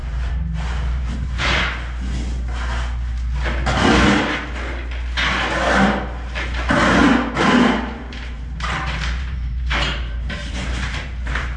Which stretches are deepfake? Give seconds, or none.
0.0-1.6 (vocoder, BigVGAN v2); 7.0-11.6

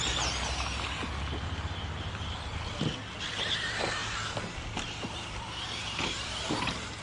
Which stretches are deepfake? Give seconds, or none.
4.0-7.0 (vocoder, BigVGAN v2)

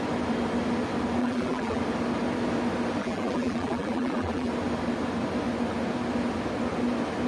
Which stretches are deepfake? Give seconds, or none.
1.2-1.8 (vocoder, BigVGAN v2); 3.0-4.5

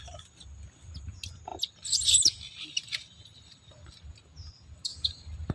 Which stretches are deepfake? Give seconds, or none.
1.5-3.9 (vocoder, BigVGAN v2)

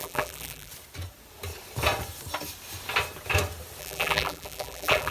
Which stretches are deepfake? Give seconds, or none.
0.0-0.7 (vocoder, BigVGAN v2); 3.8-5.1

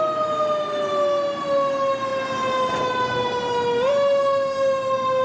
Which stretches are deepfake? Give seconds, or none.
none

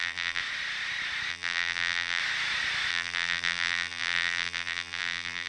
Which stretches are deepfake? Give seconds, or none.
0.0-0.4 (vocoder, BigVGAN v2); 1.3-2.2; 2.9-5.5

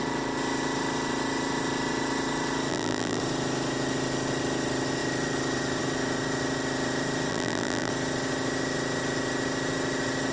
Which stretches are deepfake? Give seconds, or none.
2.7-3.2 (vocoder, BigVGAN v2); 7.3-7.9